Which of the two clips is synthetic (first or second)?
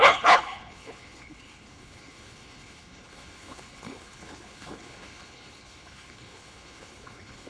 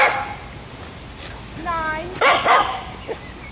first